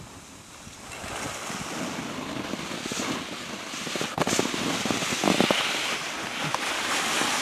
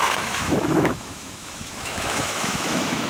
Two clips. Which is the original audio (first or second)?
first